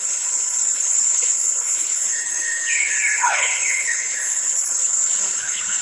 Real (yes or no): no